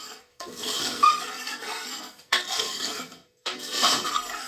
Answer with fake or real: fake